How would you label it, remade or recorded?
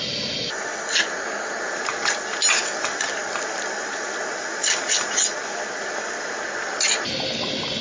recorded